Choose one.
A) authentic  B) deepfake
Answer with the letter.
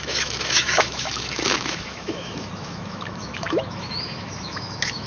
B